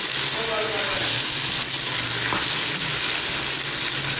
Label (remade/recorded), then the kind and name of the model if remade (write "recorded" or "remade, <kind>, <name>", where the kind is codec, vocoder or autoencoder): recorded